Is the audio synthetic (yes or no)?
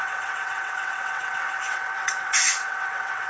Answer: yes